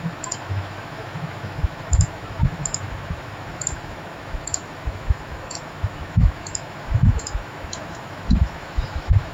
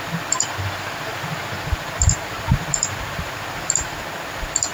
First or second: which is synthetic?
first